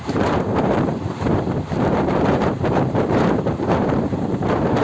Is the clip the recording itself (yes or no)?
no